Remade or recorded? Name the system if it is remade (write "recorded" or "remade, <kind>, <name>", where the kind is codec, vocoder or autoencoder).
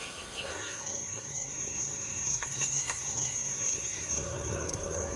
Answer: remade, codec, SNAC